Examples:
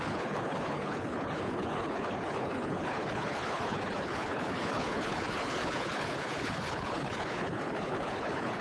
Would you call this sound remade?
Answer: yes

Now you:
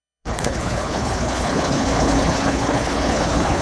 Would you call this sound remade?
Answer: yes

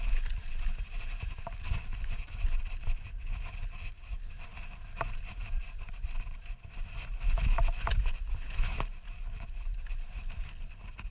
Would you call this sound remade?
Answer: no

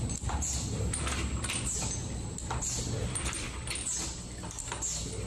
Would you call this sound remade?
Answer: no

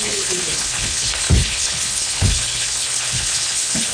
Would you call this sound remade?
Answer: yes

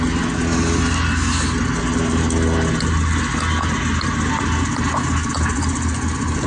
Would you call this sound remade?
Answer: no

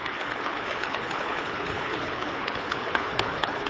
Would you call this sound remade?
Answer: yes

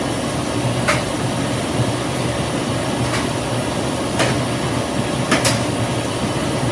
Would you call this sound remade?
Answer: no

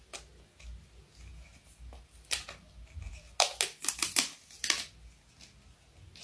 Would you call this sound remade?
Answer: no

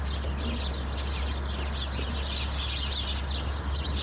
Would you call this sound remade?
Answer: no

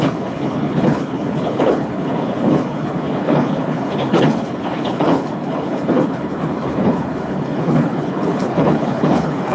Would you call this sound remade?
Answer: yes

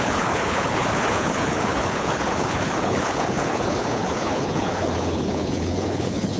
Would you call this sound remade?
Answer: yes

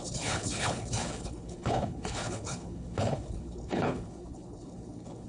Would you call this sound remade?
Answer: yes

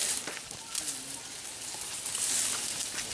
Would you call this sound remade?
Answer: no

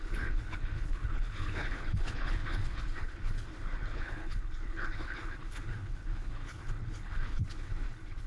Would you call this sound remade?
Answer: yes